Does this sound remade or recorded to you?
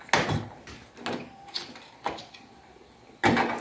recorded